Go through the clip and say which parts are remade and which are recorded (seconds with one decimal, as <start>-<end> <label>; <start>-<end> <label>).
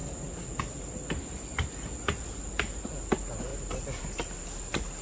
0.0-5.0 recorded